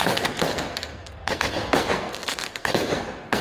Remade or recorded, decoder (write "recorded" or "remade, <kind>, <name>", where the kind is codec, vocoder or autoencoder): remade, codec, SNAC